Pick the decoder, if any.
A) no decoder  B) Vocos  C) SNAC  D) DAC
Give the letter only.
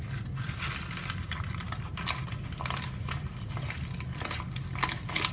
A